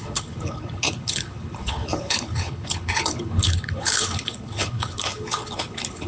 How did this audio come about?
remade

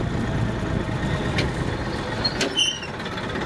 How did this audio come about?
recorded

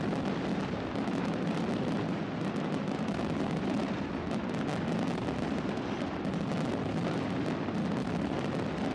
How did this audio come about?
recorded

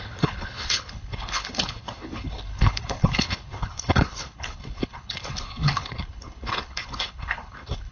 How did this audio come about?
remade